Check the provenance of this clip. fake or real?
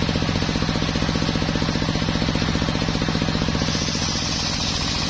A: real